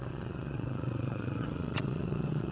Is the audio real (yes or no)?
no